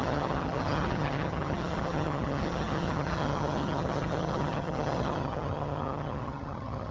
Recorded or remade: remade